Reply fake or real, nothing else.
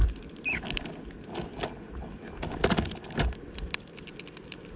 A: real